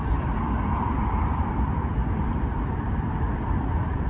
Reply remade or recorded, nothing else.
remade